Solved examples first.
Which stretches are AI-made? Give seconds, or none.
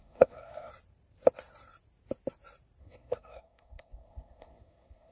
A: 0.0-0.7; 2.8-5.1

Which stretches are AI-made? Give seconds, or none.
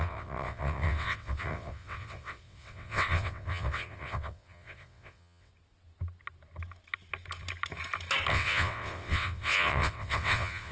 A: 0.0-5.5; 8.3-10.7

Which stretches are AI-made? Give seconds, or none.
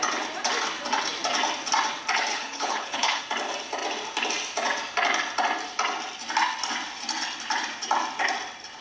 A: 2.3-3.2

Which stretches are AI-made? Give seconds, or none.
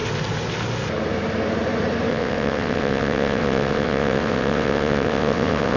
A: 2.1-5.8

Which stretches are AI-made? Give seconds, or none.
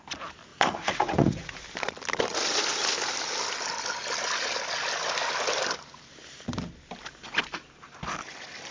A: 0.5-1.6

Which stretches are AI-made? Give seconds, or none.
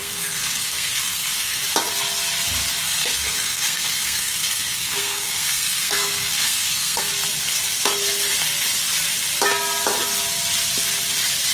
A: 0.0-1.6; 2.8-7.1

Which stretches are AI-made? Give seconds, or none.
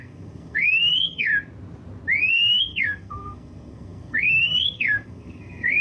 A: 0.0-1.3; 2.3-5.8